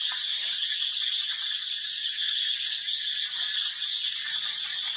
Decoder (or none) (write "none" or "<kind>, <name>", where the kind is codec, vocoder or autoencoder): none